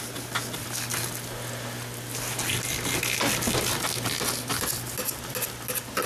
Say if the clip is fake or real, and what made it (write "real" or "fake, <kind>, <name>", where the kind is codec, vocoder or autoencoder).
real